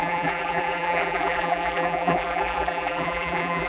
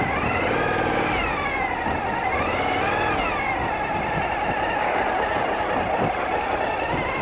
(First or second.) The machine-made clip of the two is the first